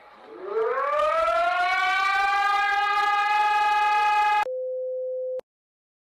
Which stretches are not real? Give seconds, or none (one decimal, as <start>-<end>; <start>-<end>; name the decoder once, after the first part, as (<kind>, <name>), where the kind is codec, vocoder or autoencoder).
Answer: none